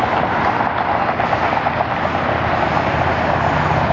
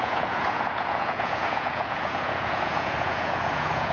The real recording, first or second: first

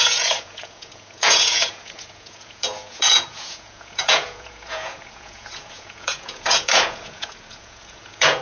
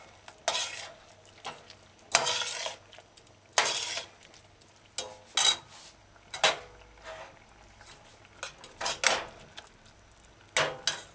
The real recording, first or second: second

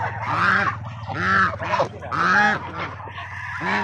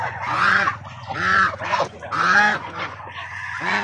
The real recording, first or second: first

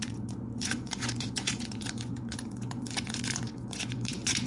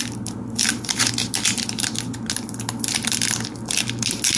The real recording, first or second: second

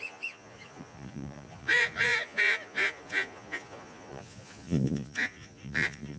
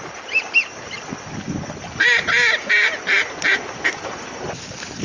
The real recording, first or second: second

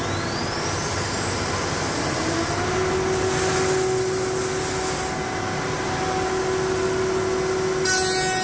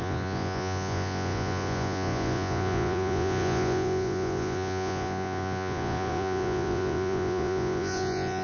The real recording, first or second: first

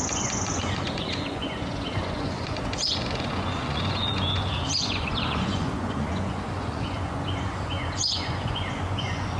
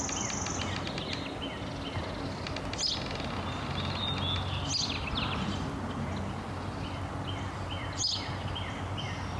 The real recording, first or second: second